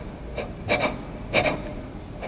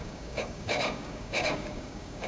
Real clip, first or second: first